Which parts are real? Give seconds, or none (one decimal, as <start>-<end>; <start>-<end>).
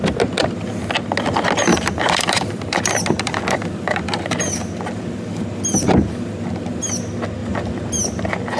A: 0.0-1.7; 6.9-8.6